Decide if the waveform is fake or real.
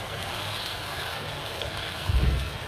fake